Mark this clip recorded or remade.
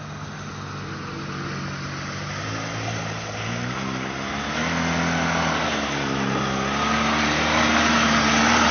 recorded